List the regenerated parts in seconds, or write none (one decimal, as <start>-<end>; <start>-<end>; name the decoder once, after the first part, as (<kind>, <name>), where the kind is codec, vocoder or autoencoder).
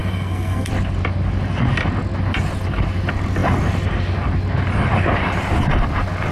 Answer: 0.0-0.7 (codec, SNAC)